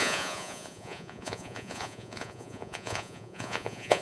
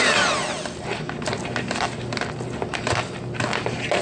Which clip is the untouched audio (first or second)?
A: second